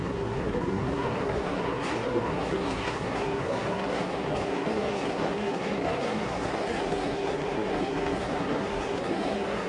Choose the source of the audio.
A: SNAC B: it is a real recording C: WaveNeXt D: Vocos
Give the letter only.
A